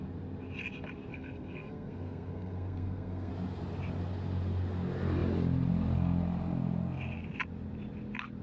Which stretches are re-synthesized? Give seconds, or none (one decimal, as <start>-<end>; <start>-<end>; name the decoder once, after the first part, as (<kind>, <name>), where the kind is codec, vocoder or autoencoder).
1.1-3.3 (codec, SNAC)